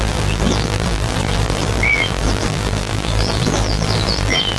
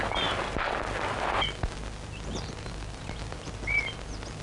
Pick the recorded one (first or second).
second